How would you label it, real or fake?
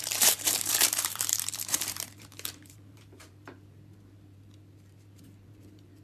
fake